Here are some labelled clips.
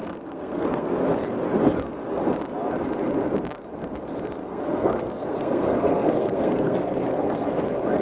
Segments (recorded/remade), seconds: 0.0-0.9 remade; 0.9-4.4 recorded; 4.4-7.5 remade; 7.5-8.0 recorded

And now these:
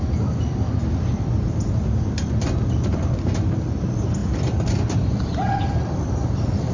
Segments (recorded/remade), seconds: 0.0-4.2 recorded; 4.2-6.7 remade

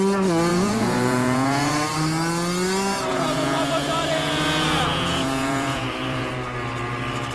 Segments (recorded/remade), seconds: 0.0-0.5 recorded; 0.5-1.7 remade; 1.7-3.1 recorded; 3.1-6.3 remade; 6.3-7.3 recorded